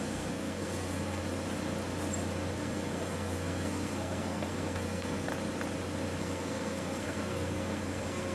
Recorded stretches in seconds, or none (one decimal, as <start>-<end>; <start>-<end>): 1.2-2.5; 5.3-6.2